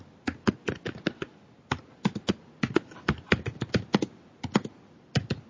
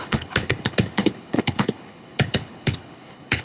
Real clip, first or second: first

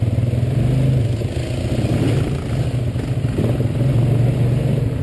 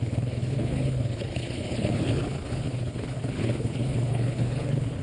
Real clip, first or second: first